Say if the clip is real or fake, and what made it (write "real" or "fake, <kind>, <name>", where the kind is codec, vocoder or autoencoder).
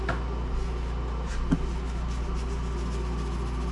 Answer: real